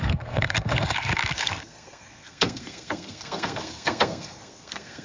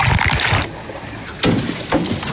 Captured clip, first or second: second